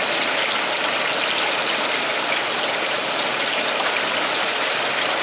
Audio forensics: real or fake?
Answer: real